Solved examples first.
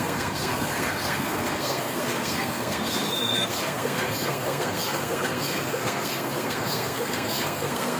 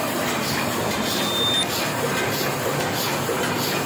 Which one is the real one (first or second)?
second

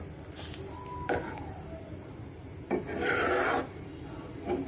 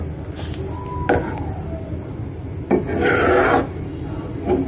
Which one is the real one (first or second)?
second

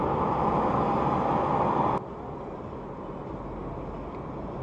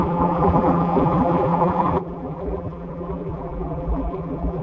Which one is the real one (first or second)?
first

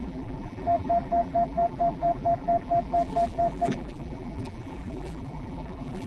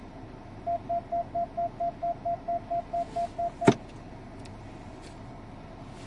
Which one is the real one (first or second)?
second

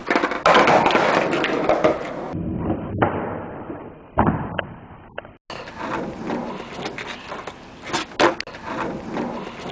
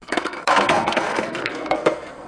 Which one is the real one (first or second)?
first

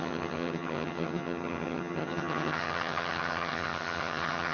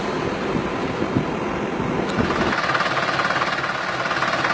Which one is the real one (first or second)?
second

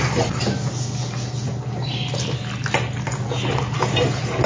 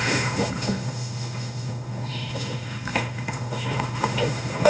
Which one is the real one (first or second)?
first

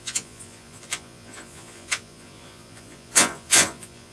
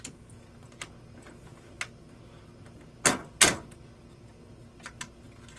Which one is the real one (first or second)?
second